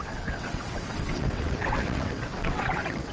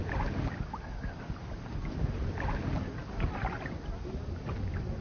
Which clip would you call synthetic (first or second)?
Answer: first